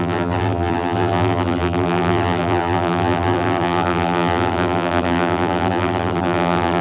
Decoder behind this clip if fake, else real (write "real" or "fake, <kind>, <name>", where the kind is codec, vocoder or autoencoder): fake, vocoder, BigVGAN v2